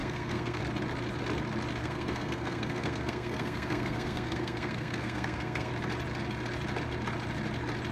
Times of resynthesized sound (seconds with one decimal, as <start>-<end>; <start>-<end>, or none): 0.0-0.6; 1.8-5.7